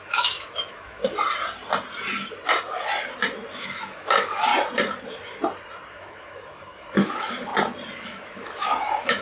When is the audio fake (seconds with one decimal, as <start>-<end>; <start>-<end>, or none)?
0.0-1.0; 3.6-4.5; 5.9-7.5; 8.0-9.2

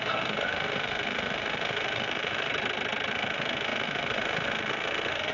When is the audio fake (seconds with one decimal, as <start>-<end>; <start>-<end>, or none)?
0.0-2.5; 3.1-5.3

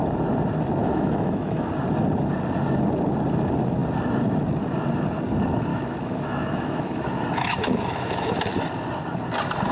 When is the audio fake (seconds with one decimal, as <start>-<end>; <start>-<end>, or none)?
0.8-1.7; 5.7-8.4

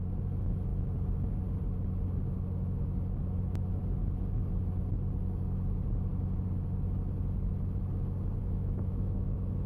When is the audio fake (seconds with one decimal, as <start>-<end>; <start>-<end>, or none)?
8.4-9.7

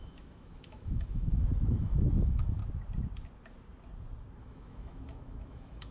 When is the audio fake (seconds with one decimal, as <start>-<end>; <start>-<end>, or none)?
0.0-2.6; 4.4-5.9

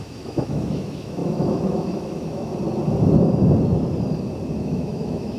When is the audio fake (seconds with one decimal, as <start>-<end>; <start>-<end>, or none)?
0.0-2.5; 4.6-5.4